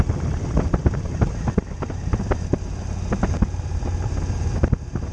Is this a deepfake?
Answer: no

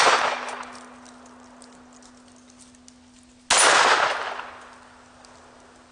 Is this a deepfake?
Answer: no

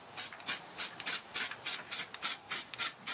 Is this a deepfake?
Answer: no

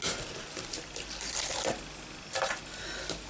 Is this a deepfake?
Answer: no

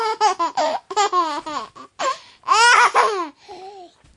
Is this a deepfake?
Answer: no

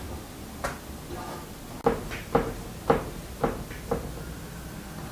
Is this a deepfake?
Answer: no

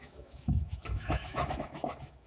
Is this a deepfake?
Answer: yes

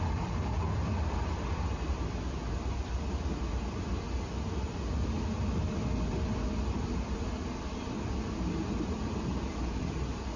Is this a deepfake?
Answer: no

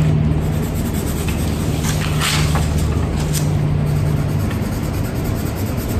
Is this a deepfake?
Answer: no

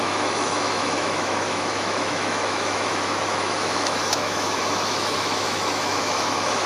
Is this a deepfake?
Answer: yes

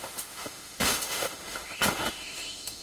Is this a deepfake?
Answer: yes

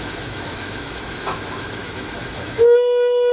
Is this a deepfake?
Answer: yes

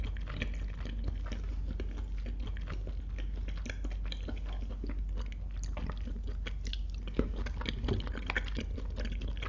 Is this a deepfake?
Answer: no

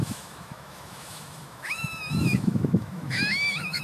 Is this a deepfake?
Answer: yes